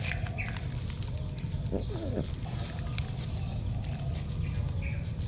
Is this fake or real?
real